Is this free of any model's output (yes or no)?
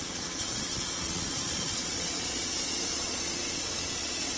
no